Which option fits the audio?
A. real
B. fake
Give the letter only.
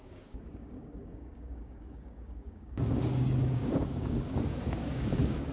B